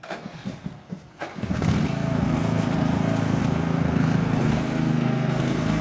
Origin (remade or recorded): remade